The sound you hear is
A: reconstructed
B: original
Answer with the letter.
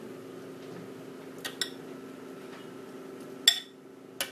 B